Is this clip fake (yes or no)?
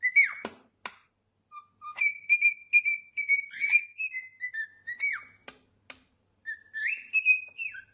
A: no